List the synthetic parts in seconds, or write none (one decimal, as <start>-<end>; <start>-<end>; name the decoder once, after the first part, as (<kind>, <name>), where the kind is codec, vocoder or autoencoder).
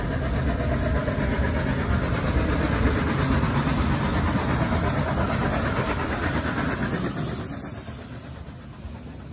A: none